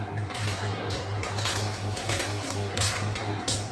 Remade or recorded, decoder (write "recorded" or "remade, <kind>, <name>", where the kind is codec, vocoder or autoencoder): remade, codec, SNAC